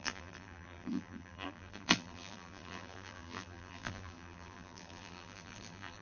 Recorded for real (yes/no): no